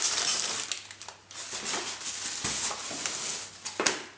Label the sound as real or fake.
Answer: real